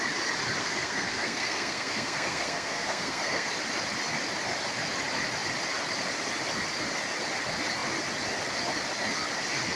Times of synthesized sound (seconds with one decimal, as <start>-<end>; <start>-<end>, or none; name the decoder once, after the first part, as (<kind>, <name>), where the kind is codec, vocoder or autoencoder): 0.6-3.5 (codec, SNAC)